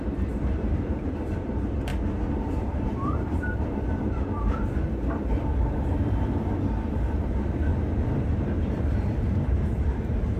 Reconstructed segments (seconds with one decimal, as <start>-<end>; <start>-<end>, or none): 0.0-1.9; 2.6-7.7; 8.7-10.4